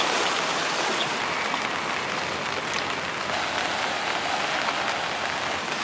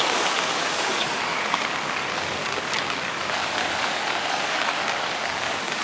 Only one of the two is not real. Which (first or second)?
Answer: second